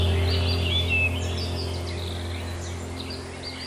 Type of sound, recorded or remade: recorded